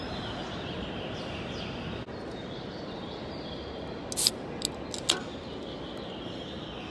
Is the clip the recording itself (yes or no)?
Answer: yes